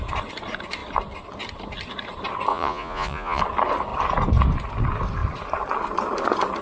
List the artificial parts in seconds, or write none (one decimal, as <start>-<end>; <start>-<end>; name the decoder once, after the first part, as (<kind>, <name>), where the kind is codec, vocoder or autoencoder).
2.5-3.4 (vocoder, Vocos)